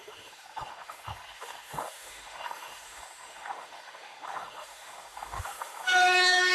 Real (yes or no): no